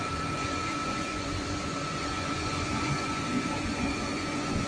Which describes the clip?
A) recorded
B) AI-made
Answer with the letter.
B